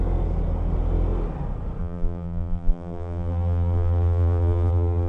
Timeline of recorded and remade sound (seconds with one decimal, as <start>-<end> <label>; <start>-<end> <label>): 0.0-1.8 recorded; 1.8-5.1 remade